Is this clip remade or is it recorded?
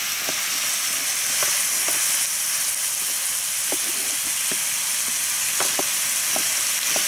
recorded